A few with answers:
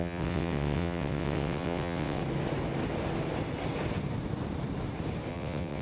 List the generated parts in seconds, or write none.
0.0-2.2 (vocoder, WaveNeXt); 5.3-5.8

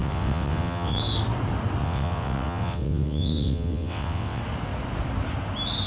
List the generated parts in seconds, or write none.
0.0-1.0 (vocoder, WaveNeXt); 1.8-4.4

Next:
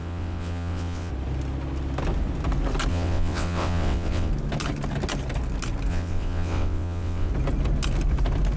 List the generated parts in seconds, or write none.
0.0-1.1 (vocoder, WaveNeXt); 2.9-4.3; 5.9-7.3

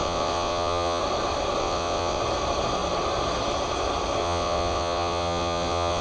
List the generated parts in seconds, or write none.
0.0-1.0 (vocoder, WaveNeXt); 1.6-2.2; 4.2-6.0